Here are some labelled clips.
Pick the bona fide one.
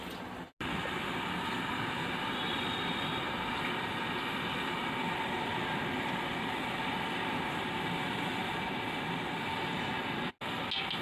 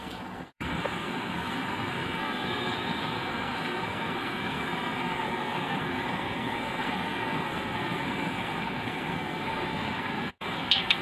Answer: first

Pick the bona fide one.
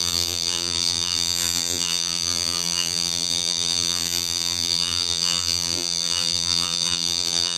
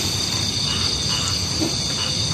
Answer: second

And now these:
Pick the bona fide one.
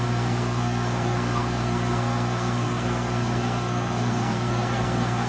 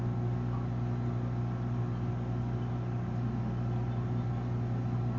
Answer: second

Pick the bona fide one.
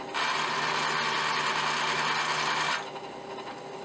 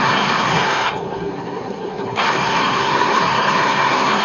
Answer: first